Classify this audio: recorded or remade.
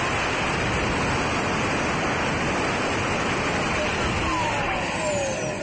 recorded